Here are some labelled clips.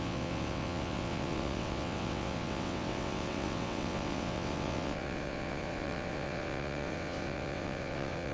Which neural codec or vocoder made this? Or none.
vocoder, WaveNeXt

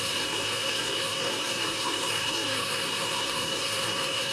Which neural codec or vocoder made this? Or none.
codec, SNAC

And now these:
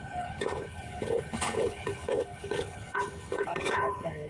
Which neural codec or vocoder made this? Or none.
codec, HILCodec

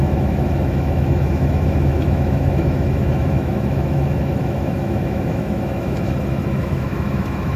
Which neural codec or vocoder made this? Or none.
autoencoder, DAC-VAE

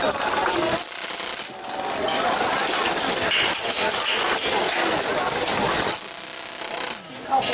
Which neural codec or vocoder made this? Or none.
none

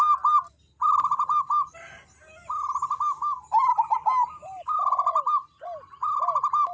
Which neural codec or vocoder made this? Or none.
none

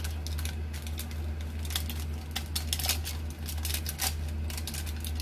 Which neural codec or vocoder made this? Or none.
none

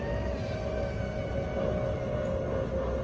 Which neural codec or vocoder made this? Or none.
none